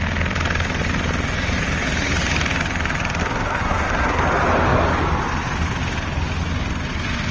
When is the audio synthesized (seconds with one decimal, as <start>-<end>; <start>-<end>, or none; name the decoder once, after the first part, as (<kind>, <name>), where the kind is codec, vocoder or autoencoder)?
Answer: 3.2-4.2 (codec, SNAC)